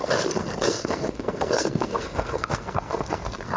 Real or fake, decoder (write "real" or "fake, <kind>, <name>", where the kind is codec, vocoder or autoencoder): fake, codec, SNAC